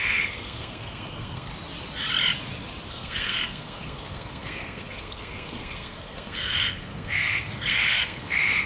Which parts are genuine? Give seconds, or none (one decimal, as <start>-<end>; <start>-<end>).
1.5-2.9